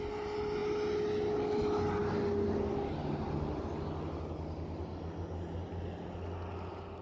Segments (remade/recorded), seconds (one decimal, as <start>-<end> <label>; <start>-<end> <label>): 0.0-7.0 recorded